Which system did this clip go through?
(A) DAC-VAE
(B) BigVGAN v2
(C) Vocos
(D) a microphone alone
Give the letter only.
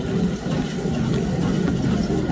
D